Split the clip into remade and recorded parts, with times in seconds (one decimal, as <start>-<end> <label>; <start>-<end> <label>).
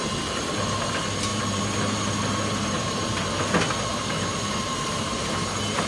0.0-1.3 recorded; 1.3-3.4 remade; 3.4-3.9 recorded; 3.9-5.9 remade